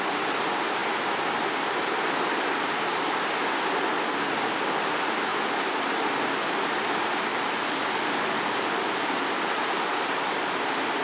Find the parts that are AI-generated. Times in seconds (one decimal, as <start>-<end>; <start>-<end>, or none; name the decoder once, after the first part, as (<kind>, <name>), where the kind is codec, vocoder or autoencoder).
none